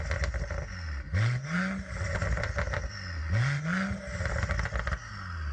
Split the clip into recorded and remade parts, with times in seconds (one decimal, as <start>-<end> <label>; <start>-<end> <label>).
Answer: 0.0-5.5 recorded